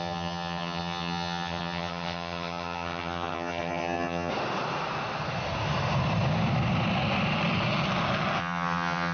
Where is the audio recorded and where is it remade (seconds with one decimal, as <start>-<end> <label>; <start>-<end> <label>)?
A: 0.0-4.3 remade; 4.3-8.4 recorded; 8.4-9.1 remade